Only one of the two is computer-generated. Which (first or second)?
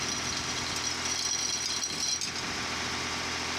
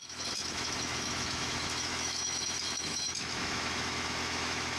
second